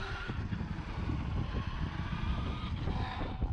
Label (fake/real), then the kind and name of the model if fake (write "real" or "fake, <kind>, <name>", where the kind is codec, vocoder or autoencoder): real